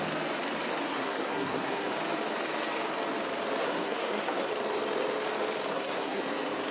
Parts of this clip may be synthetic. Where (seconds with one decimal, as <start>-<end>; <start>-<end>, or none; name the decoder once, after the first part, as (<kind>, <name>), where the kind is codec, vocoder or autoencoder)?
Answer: 0.9-1.9 (codec, SNAC); 3.6-4.5; 5.7-6.2

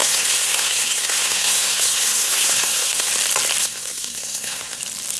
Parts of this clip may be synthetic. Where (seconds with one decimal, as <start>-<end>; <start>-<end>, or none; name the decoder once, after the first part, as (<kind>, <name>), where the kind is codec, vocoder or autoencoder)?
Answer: 0.0-3.1 (codec, SNAC); 3.6-4.8

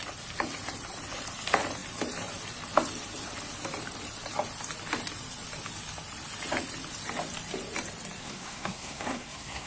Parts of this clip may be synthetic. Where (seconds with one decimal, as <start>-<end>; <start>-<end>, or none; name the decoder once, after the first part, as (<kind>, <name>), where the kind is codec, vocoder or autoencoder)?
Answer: 8.2-9.7 (codec, SNAC)

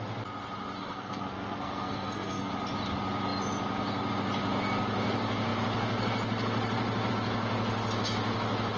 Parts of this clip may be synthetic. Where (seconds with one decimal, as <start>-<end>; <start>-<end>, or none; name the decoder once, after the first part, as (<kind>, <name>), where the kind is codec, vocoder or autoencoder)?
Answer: 0.8-2.5 (codec, SNAC)

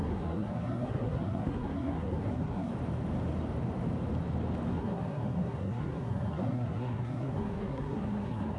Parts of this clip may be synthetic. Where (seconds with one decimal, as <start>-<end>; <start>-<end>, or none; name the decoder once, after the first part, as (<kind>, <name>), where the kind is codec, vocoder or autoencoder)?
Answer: 0.0-2.7 (codec, SNAC); 4.7-8.6

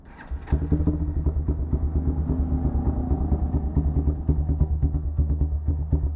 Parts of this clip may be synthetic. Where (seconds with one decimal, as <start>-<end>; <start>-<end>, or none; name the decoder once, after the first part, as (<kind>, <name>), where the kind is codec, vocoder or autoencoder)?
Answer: 4.6-5.7 (codec, SNAC)

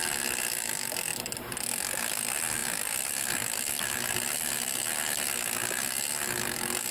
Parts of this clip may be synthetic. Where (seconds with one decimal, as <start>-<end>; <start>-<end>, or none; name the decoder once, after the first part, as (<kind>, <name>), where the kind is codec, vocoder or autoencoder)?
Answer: none

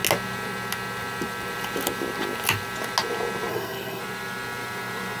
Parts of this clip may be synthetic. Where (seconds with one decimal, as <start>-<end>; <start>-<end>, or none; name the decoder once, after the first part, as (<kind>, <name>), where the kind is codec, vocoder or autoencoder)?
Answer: 3.5-4.0 (codec, SNAC)